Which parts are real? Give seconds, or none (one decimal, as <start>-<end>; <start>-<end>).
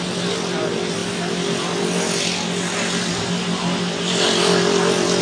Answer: 0.0-5.2